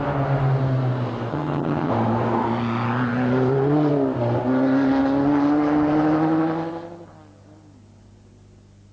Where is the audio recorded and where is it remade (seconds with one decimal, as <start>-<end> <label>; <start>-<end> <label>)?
0.0-1.3 recorded; 1.3-1.9 remade; 1.9-8.9 recorded